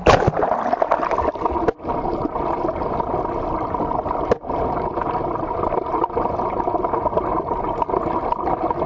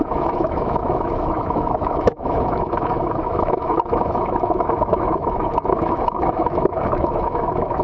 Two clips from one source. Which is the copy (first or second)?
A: second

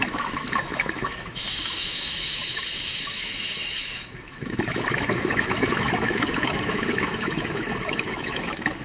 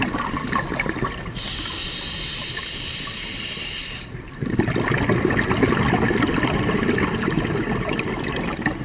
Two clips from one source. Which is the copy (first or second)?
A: first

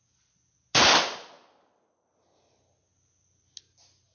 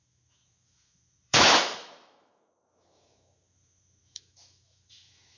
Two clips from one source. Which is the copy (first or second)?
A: second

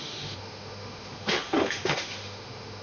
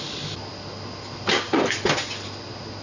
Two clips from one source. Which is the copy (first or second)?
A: first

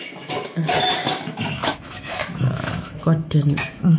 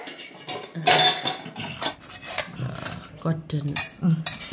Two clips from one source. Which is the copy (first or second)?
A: first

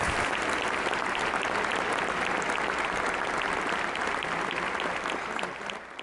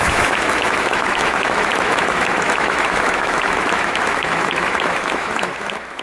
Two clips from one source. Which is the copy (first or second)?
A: second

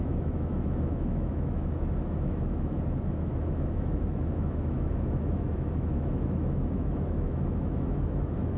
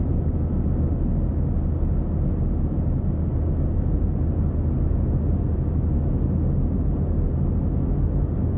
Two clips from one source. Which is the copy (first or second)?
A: first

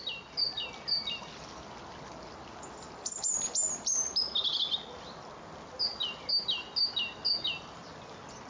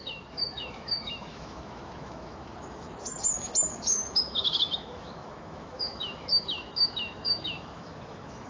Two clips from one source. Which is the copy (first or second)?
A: second